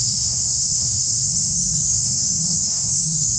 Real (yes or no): no